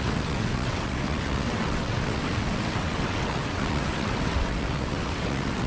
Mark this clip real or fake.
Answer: fake